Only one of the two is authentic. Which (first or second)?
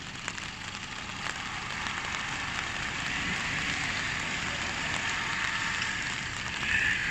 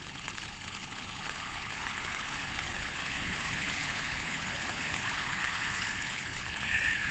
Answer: first